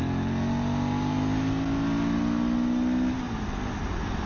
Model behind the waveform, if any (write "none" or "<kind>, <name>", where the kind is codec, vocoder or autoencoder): none